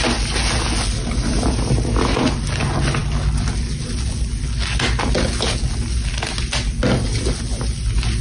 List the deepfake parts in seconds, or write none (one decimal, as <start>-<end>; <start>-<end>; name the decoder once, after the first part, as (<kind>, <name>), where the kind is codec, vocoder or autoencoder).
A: none